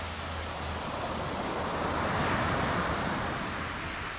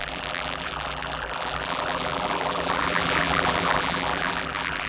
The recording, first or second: first